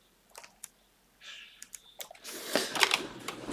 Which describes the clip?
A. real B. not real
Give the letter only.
B